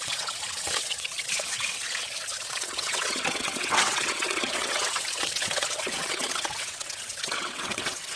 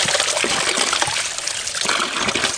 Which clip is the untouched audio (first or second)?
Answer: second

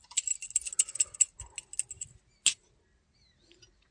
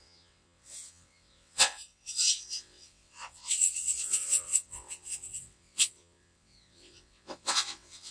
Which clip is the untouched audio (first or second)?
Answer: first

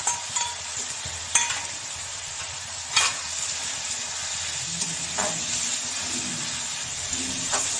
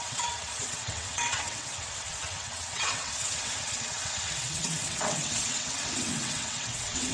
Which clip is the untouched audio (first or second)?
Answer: first